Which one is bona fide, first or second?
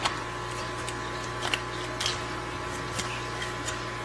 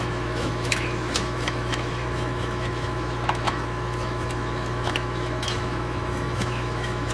first